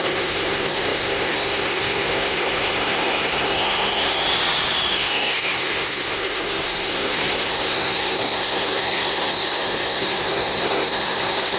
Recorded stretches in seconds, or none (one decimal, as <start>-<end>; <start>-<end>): 4.2-4.9